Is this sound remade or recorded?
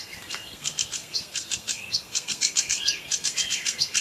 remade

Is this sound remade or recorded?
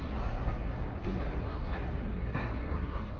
remade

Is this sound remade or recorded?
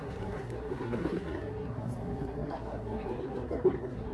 remade